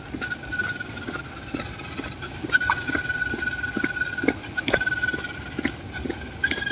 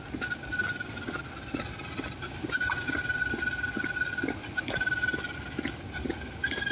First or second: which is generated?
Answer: first